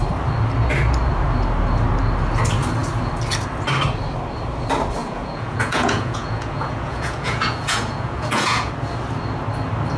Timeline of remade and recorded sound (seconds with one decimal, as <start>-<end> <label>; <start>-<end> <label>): 0.0-5.0 recorded; 5.0-8.7 remade; 8.7-10.0 recorded